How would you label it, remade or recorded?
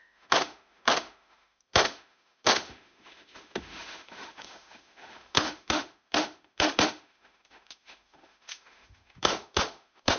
remade